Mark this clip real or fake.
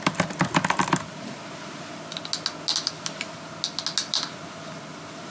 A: real